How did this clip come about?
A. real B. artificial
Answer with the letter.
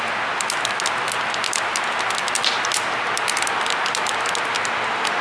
A